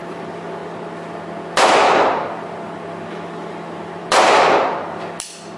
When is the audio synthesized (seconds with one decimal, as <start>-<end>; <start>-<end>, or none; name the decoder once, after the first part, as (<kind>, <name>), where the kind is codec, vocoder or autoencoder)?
none